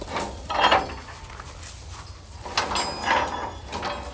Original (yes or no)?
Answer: yes